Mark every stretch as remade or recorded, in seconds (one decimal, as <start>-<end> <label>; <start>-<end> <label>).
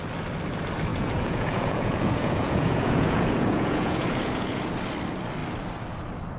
0.0-0.9 recorded; 0.9-4.7 remade; 4.7-6.4 recorded